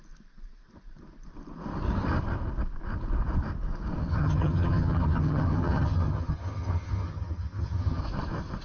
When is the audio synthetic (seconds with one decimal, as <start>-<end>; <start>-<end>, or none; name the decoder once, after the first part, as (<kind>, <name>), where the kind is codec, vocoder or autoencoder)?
4.1-8.0 (vocoder, HiFi-GAN)